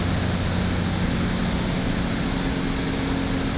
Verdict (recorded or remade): recorded